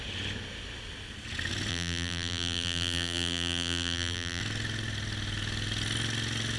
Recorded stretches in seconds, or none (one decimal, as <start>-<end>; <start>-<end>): 0.0-1.7; 4.4-6.6